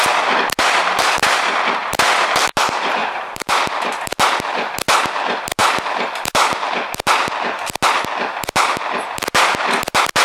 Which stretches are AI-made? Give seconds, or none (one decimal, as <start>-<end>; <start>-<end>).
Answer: 3.0-3.6